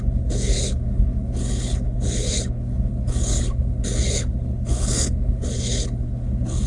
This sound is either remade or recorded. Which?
remade